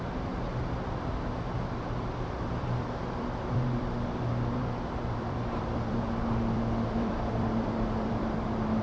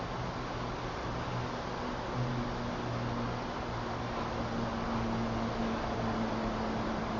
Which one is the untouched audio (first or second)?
second